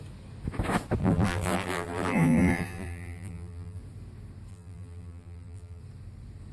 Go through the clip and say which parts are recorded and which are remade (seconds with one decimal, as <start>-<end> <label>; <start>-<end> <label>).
0.0-1.0 recorded; 1.0-3.8 remade; 3.8-4.5 recorded; 4.5-5.8 remade; 5.8-6.5 recorded